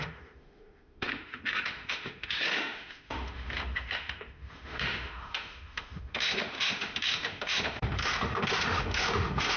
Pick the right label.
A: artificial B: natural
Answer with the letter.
A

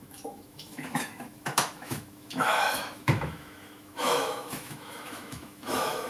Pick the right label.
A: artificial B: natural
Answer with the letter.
A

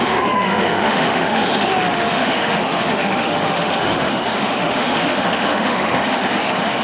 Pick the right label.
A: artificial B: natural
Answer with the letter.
A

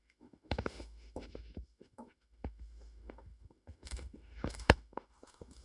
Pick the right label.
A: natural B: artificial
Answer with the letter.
B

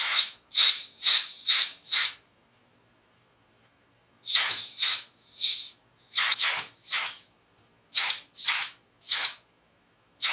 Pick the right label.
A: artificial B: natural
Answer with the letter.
A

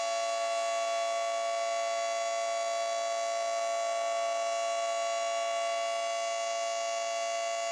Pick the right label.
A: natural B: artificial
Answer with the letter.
A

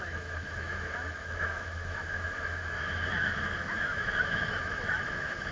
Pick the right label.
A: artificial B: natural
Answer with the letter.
A